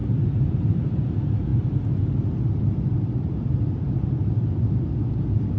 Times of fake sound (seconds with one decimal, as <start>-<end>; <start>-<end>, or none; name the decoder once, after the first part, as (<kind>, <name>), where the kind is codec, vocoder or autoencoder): 0.0-1.1 (vocoder, BigVGAN v2)